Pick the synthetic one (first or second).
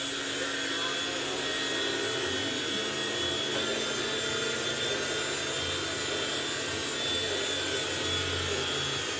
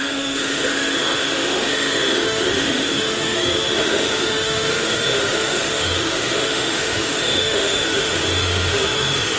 second